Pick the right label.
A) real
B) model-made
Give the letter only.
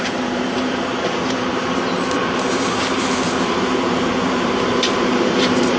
B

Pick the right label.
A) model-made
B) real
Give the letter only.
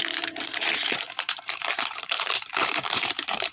A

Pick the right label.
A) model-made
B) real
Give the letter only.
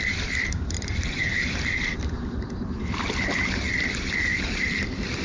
A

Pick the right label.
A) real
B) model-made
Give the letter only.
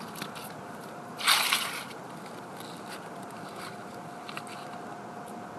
A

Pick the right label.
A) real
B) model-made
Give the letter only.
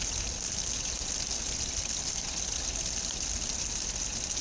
A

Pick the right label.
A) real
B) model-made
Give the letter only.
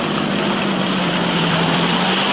B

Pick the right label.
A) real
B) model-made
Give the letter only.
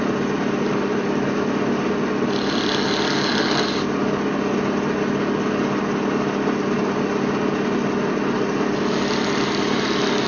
A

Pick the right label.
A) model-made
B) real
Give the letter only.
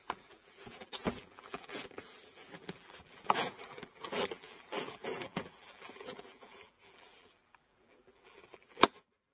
A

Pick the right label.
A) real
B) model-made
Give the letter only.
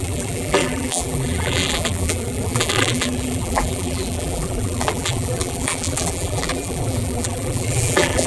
B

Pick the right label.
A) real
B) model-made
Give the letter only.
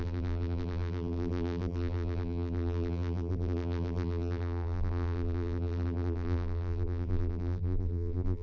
B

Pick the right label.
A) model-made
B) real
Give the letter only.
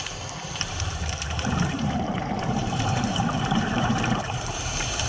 A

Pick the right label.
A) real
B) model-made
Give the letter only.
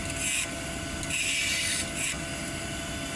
A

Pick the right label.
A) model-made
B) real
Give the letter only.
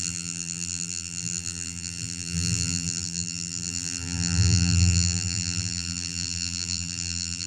A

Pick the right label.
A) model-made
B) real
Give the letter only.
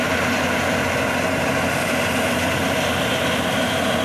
B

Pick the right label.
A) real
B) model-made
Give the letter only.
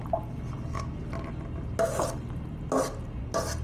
A